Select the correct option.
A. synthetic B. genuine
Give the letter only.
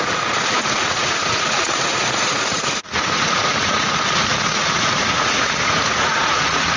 A